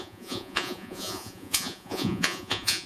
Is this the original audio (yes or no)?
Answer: no